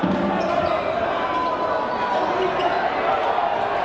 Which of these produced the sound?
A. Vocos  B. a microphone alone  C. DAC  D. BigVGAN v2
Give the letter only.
B